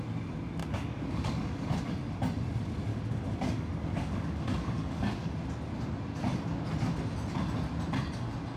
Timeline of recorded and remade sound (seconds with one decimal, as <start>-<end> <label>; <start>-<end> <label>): 0.0-0.6 recorded; 0.6-1.7 remade; 1.7-2.9 recorded; 2.9-5.3 remade; 5.3-8.6 recorded